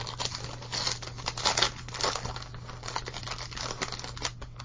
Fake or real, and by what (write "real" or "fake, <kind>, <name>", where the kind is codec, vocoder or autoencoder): real